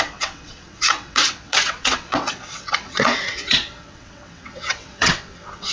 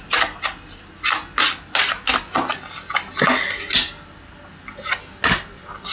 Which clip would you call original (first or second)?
second